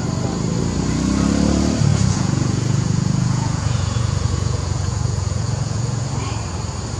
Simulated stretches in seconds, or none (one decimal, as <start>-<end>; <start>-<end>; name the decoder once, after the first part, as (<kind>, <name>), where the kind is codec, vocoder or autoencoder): 1.9-6.1 (vocoder, Vocos)